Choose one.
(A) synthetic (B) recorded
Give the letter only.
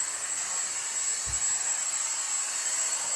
B